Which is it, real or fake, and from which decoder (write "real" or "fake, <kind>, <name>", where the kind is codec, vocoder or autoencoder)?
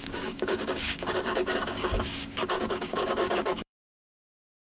fake, codec, DAC